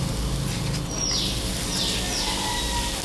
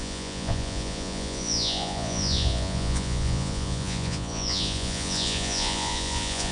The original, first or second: first